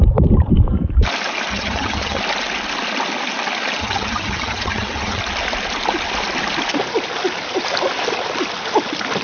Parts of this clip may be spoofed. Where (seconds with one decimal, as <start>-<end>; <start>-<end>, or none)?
1.5-2.2; 3.8-5.2